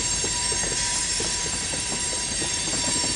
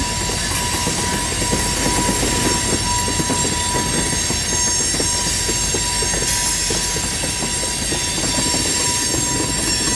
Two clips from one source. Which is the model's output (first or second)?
first